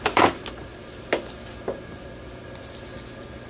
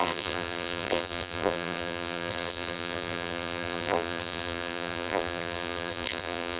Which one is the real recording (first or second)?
first